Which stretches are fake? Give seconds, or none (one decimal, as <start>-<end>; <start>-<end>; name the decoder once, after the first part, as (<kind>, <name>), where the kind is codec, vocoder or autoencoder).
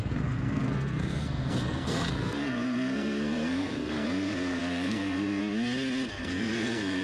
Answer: 0.0-5.4 (codec, SNAC); 6.2-7.0